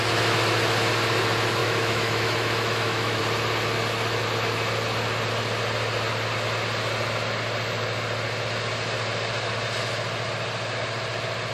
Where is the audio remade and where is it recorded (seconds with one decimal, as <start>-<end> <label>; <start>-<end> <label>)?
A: 0.0-1.6 recorded; 1.6-3.2 remade; 3.2-11.5 recorded